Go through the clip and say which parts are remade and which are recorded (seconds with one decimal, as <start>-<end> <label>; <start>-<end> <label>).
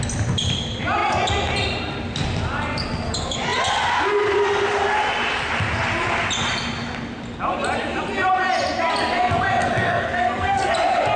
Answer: 0.0-9.6 recorded; 9.6-10.7 remade; 10.7-11.2 recorded